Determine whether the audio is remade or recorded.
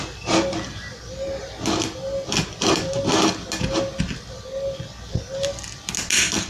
recorded